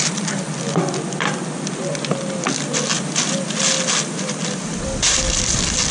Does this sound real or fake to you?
real